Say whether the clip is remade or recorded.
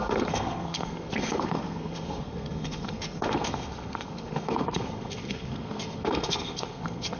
remade